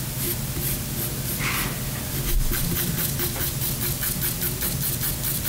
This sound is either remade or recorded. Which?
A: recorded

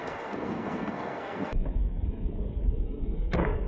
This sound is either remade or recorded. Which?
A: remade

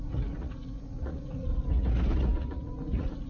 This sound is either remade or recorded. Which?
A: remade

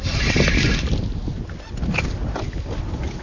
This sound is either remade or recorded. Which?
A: recorded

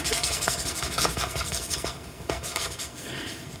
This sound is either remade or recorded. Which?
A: remade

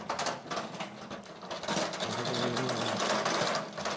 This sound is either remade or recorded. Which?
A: recorded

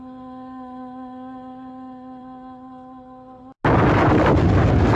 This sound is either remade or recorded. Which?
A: recorded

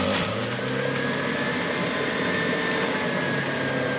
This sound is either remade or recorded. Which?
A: recorded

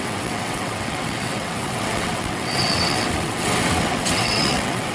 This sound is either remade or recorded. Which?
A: remade